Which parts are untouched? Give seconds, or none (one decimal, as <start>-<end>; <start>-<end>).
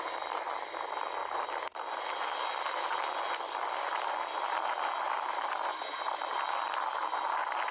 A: 0.0-7.7